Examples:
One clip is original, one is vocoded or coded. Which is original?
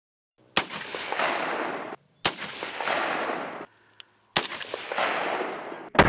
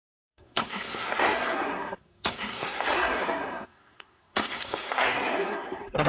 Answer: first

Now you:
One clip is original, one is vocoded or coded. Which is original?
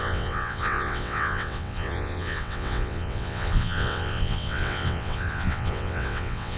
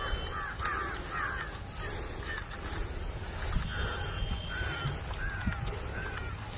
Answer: second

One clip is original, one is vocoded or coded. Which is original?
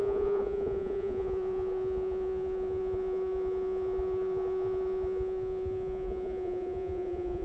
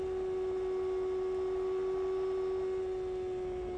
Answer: second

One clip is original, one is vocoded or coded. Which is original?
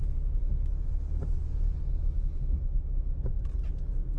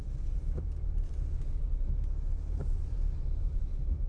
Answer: first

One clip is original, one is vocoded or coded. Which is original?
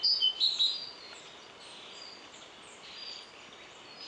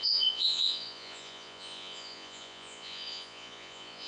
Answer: first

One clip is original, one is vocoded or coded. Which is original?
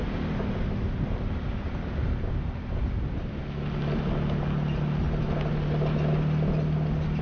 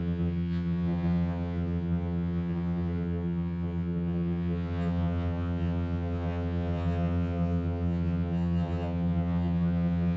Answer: first